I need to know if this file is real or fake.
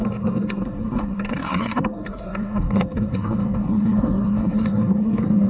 fake